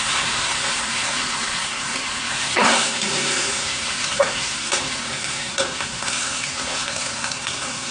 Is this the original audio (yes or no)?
no